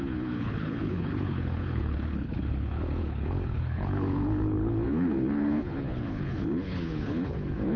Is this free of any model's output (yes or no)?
no